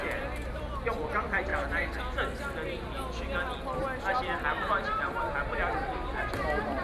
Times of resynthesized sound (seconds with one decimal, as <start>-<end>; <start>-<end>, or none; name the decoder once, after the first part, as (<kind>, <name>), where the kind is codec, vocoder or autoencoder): 0.0-1.5 (vocoder, BigVGAN v2); 4.4-5.6; 6.2-6.8